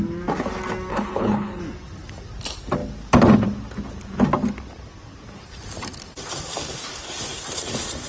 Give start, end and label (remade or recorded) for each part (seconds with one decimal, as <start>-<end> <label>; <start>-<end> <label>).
0.0-0.9 recorded; 0.9-1.6 remade; 1.6-8.1 recorded